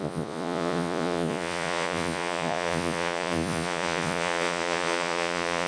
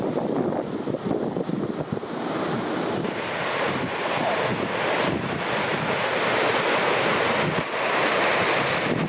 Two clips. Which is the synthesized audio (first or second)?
first